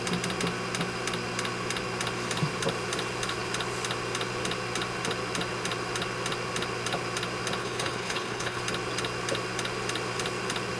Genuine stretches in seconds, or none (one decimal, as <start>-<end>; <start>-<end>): 0.0-7.6; 8.6-10.8

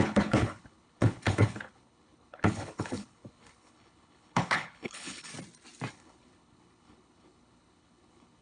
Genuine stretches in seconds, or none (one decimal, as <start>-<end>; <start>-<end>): 5.3-5.9

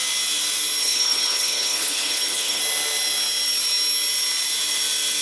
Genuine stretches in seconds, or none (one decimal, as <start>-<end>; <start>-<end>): 0.0-0.8; 2.6-5.2